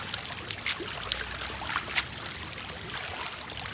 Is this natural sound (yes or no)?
yes